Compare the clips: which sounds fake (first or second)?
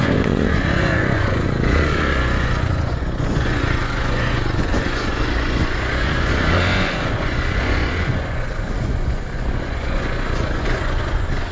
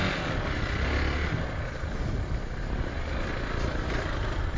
first